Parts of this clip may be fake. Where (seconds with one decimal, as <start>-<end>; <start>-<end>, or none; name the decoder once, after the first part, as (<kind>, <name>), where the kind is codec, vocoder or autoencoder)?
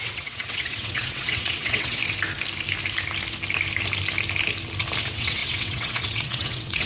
0.0-2.0 (vocoder, WaveNeXt); 5.0-6.9